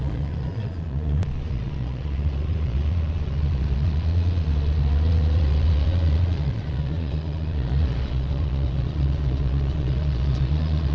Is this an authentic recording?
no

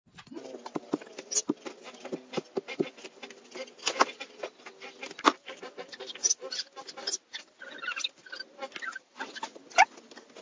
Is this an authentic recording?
yes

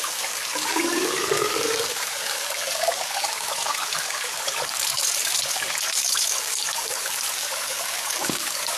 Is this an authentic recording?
no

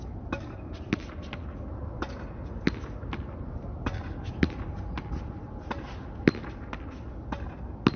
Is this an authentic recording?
yes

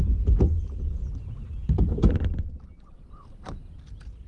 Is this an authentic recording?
yes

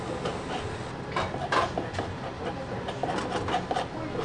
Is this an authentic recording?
yes